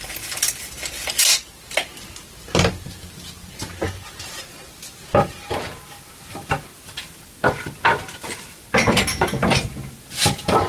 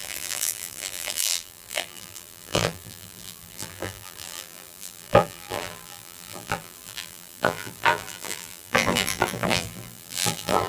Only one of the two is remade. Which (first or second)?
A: second